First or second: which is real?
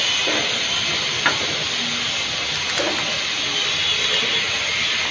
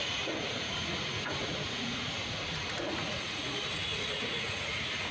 first